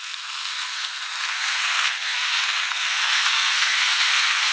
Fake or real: fake